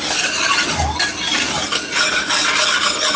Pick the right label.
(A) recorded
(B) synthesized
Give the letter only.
A